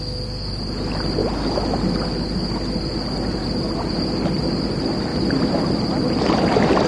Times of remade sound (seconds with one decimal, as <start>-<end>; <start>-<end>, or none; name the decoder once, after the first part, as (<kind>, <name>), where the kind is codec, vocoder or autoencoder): none